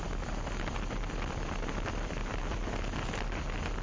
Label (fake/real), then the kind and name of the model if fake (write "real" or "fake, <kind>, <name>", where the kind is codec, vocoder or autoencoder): real